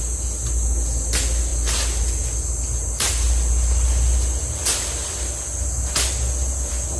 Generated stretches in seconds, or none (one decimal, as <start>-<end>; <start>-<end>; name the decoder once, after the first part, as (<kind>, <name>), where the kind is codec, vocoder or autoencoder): none

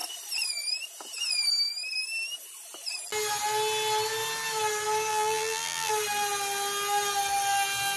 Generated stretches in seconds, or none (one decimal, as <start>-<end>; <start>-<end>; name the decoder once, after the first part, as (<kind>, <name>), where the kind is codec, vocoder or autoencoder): 5.1-5.9 (vocoder, BigVGAN v2)

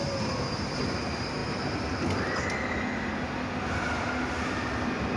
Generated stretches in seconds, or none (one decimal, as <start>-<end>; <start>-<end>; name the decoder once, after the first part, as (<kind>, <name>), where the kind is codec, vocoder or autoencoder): none

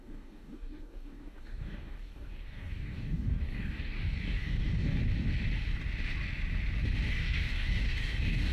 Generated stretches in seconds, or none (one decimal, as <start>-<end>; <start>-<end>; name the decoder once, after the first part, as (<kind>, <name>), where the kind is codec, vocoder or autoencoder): 0.0-5.0 (codec, DAC); 7.1-8.5

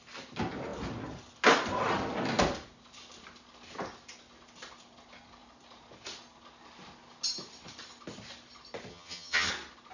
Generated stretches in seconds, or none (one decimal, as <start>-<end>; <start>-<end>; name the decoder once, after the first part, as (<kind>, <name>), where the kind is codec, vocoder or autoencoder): 8.9-9.5 (vocoder, HiFi-GAN)

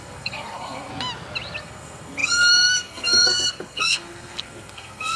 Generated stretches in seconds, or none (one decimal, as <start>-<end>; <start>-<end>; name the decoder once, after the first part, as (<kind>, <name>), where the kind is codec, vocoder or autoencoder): 0.0-0.9 (codec, SNAC); 1.6-5.2

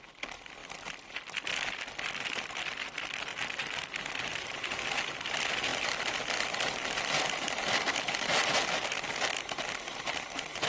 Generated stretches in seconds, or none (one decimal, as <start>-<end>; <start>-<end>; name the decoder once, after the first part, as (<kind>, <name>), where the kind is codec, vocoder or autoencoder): none

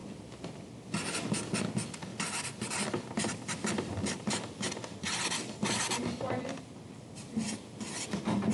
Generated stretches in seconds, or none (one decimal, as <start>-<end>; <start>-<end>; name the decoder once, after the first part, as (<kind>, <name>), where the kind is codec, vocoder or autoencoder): 0.0-0.7 (vocoder, BigVGAN v2); 2.1-6.7